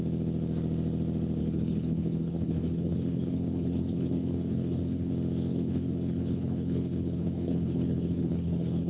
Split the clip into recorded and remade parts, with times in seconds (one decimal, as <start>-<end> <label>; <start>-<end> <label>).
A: 0.0-1.4 recorded; 1.4-5.1 remade; 5.1-5.5 recorded; 5.5-8.9 remade